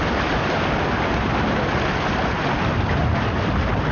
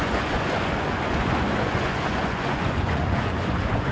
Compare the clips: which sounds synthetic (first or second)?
second